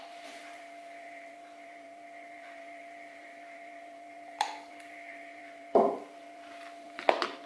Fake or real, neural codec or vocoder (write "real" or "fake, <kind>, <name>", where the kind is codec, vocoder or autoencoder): fake, vocoder, BigVGAN v2